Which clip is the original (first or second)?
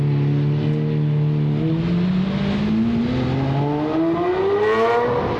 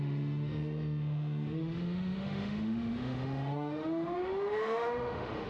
first